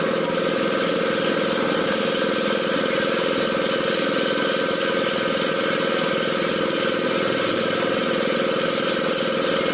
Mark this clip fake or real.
real